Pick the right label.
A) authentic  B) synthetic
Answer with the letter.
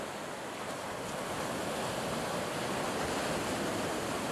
A